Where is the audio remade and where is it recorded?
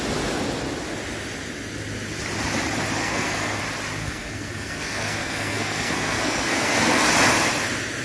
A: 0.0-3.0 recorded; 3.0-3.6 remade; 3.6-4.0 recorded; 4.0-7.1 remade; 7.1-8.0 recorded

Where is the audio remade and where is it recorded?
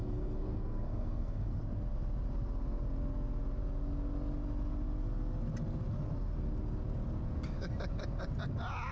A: 0.0-1.6 remade; 1.6-8.9 recorded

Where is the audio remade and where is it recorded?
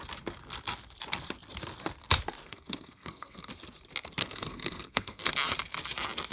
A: 0.0-2.4 recorded; 2.4-3.5 remade; 3.5-4.2 recorded; 4.2-5.3 remade; 5.3-6.3 recorded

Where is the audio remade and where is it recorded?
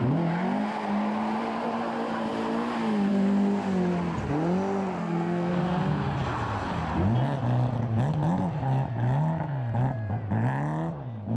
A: 0.0-5.0 recorded; 5.0-5.6 remade; 5.6-11.4 recorded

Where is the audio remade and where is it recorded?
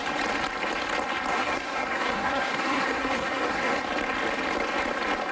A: 0.0-1.3 recorded; 1.3-3.8 remade; 3.8-5.3 recorded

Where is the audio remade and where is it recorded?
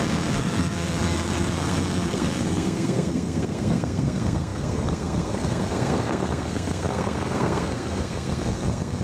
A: 0.0-9.0 remade